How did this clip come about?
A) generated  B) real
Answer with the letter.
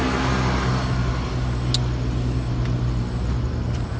B